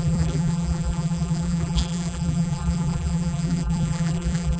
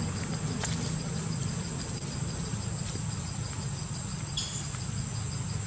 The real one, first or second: second